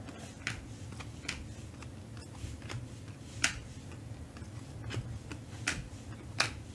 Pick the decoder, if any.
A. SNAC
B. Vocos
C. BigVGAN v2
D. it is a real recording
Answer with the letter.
D